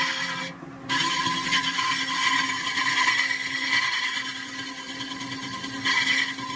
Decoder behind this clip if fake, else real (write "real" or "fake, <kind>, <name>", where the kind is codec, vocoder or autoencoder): real